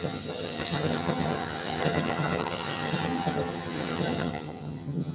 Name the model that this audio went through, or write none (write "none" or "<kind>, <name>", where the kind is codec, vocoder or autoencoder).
vocoder, HiFi-GAN